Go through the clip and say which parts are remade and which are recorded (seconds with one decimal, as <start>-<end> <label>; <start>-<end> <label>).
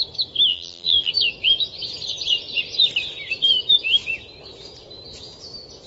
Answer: 0.0-0.5 recorded; 0.5-1.1 remade; 1.1-5.9 recorded